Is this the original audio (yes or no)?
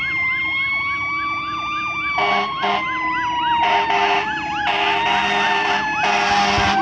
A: yes